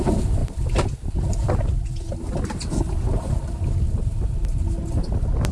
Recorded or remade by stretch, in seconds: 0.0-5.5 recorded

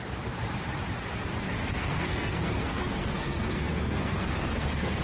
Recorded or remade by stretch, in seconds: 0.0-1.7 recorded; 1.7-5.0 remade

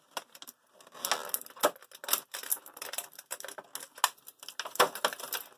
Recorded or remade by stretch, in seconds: 0.0-5.6 recorded